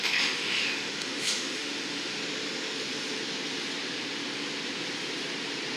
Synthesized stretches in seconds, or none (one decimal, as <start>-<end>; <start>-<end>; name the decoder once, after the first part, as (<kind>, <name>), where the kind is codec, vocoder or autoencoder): 0.0-2.2 (autoencoder, DAC-VAE)